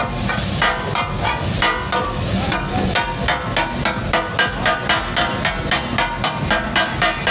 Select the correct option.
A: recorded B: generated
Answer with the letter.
A